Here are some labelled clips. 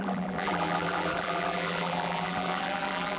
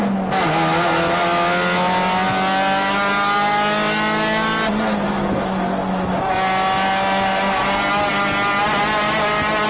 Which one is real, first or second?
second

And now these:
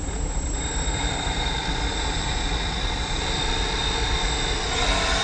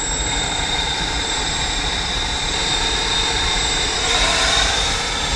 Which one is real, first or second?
first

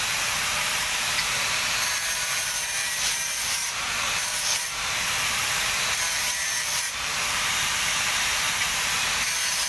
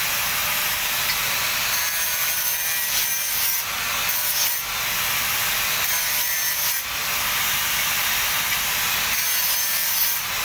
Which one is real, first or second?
second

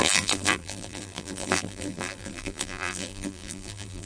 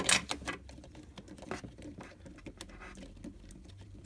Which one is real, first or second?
second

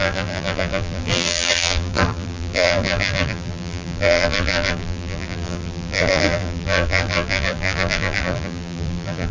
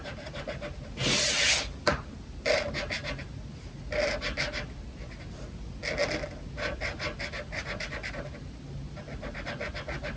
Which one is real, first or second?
second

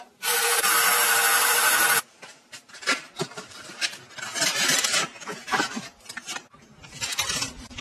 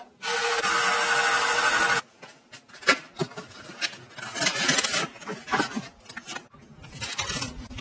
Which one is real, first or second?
second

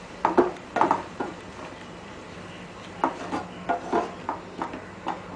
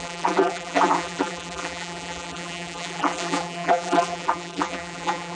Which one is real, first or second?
first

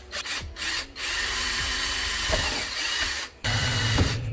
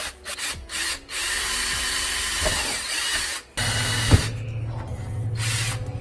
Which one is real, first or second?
second